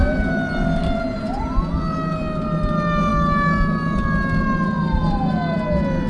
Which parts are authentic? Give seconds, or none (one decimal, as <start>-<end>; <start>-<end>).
0.0-6.1